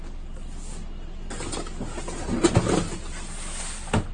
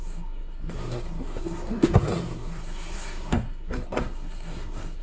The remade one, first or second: second